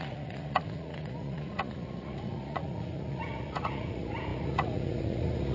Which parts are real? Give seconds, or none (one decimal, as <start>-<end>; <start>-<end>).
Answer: none